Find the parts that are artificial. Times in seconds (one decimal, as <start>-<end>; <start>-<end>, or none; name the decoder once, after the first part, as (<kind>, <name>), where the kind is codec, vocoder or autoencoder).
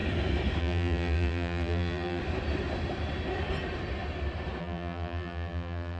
0.6-2.2 (vocoder, BigVGAN v2); 4.6-6.0